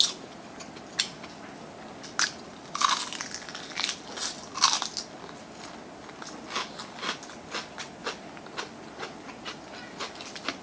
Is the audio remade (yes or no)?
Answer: no